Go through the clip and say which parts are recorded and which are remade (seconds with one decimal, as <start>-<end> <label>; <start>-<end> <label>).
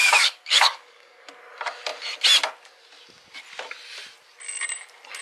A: 0.0-1.3 remade; 1.3-5.2 recorded